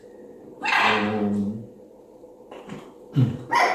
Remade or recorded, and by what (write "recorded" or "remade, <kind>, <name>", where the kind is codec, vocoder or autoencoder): recorded